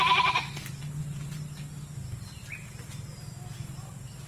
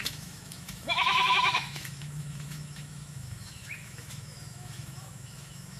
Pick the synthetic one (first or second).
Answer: second